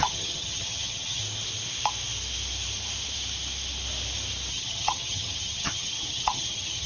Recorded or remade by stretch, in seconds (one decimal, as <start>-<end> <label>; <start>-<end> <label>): 0.0-1.2 remade; 1.2-4.5 recorded; 4.5-6.9 remade